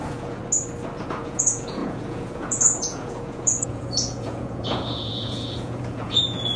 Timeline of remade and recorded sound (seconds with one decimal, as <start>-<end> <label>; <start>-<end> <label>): 0.0-0.4 remade; 0.4-1.0 recorded; 1.0-6.6 remade